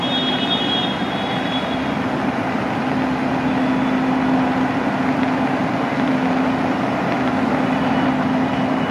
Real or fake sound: real